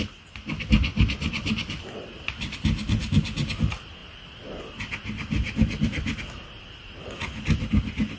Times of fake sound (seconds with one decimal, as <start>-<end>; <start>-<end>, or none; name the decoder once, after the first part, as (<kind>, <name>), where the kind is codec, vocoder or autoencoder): 0.9-1.5 (vocoder, BigVGAN v2); 2.3-3.0